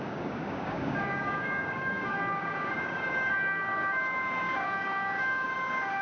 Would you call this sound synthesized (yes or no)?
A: yes